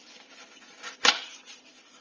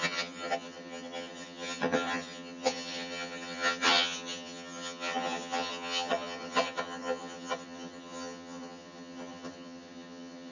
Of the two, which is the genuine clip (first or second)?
first